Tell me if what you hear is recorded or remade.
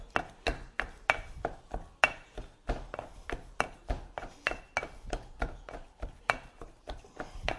recorded